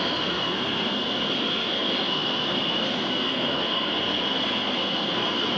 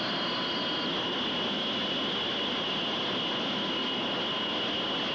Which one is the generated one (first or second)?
first